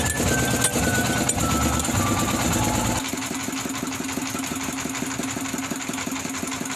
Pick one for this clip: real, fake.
real